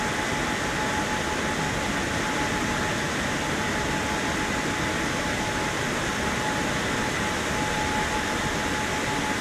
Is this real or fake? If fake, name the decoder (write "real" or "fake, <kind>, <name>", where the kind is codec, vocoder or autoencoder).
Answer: real